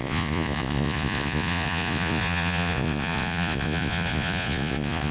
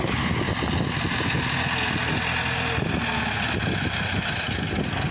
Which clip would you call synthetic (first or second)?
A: first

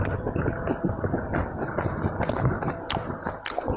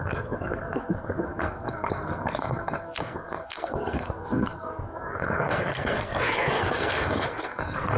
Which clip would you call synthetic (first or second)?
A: second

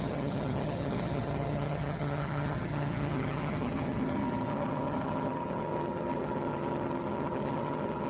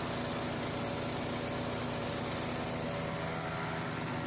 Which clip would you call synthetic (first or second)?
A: first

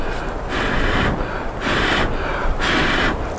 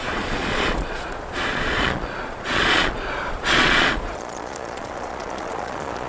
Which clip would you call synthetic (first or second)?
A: second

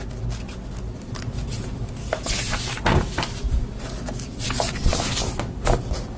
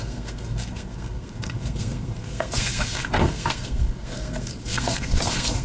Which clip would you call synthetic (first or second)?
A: second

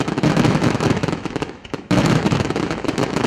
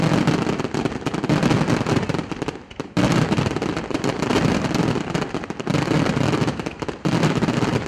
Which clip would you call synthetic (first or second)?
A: first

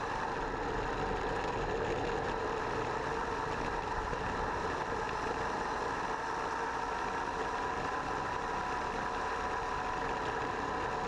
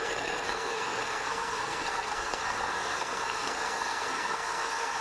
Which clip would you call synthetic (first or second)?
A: second